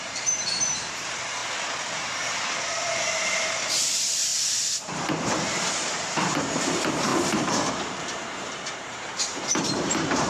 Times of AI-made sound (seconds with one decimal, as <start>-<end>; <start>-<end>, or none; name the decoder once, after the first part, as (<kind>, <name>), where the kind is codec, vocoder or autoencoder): 0.0-1.4 (vocoder, BigVGAN v2); 1.9-10.3